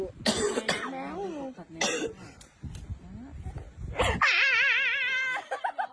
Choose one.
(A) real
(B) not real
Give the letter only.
A